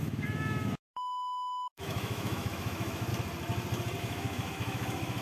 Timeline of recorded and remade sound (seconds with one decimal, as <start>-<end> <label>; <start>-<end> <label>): 0.0-3.1 remade; 3.1-4.0 recorded; 4.0-5.2 remade